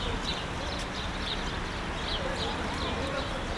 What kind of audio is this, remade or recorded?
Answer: recorded